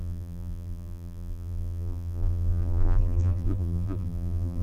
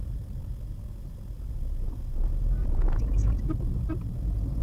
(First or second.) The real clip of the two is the second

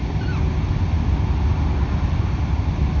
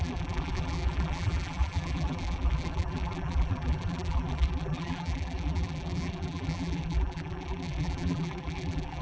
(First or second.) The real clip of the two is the first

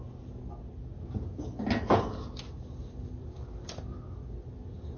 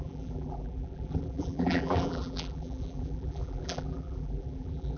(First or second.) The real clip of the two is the first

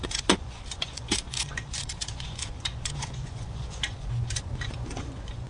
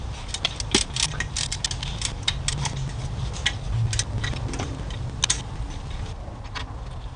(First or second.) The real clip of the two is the second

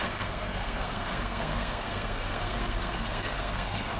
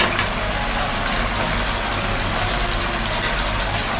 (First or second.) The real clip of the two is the second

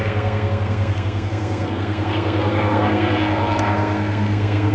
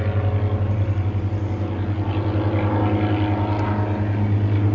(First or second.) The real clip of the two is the second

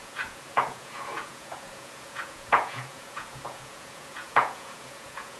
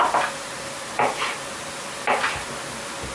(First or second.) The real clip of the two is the second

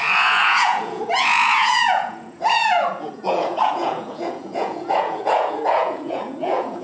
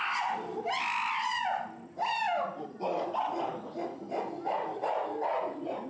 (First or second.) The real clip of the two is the second